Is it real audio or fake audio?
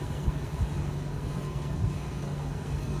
fake